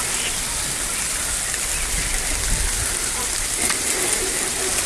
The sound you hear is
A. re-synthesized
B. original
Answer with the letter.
B